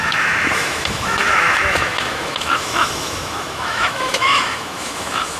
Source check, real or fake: fake